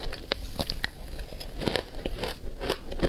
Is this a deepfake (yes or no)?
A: no